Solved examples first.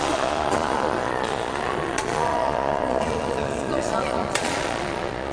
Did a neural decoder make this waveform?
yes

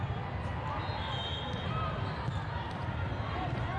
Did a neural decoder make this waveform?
no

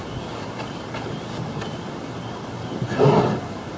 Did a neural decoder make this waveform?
no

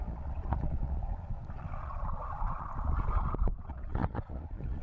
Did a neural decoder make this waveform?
yes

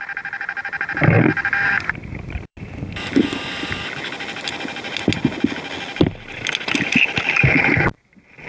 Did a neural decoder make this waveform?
no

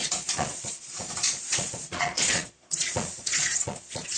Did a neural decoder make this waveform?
yes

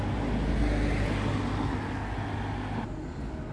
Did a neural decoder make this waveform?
no